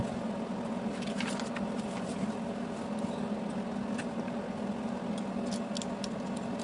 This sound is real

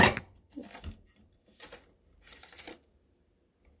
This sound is real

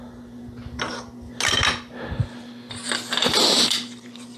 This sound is real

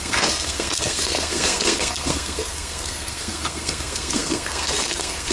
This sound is fake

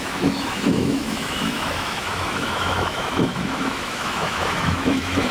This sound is fake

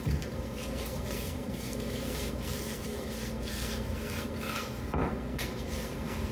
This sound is fake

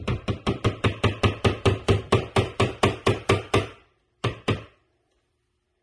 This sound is real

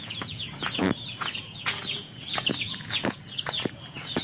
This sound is fake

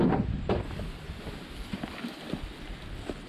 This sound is real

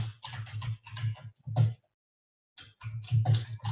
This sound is real